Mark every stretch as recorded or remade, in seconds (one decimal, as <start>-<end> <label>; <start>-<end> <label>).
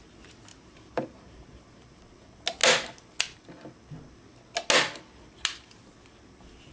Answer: 0.0-0.5 recorded; 0.5-2.0 remade; 2.0-6.7 recorded